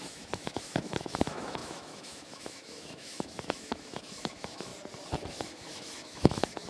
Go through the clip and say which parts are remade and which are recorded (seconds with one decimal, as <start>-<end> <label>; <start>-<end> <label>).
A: 0.0-4.7 remade; 4.7-5.3 recorded; 5.3-6.7 remade